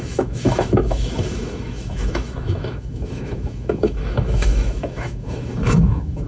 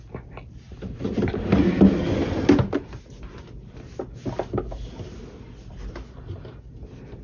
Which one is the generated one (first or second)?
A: first